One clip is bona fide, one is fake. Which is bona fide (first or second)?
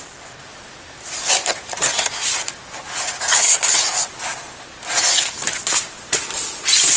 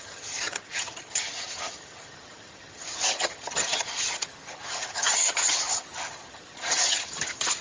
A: first